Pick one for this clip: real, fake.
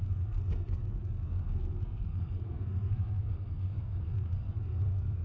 fake